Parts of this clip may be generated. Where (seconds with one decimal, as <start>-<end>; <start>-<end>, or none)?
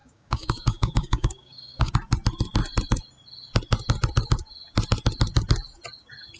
0.0-1.9